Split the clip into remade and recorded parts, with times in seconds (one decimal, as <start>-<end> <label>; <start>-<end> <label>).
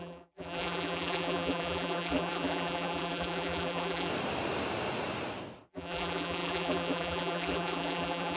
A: 0.0-4.1 remade; 4.1-5.7 recorded; 5.7-8.4 remade